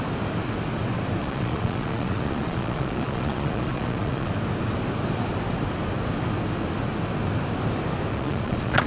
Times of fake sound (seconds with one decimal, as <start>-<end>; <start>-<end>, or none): 1.2-4.3; 8.1-8.9